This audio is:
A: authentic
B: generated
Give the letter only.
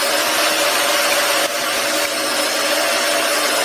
A